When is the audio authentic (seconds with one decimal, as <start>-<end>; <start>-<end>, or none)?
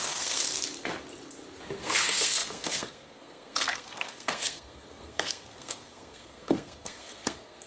0.5-1.8